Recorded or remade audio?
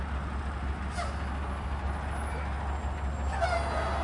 recorded